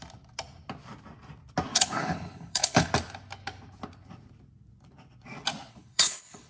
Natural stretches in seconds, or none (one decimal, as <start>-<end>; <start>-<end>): 0.0-1.7; 2.9-5.7